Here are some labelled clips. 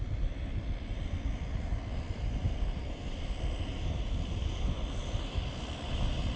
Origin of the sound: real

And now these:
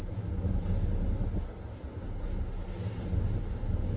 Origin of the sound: real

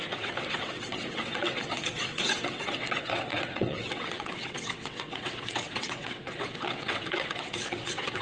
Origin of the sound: fake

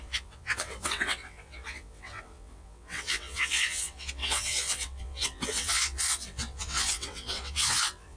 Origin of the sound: fake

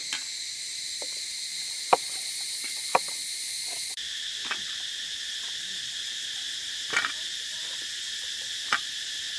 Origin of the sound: real